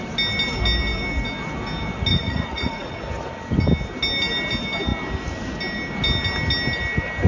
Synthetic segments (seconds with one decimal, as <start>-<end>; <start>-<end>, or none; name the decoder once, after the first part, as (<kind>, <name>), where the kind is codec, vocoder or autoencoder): 2.1-3.0 (vocoder, Vocos)